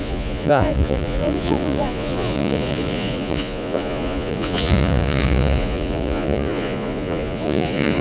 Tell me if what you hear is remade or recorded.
remade